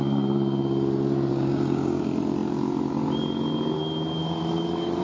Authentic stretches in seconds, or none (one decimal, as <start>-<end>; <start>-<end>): 0.0-1.3; 2.0-5.0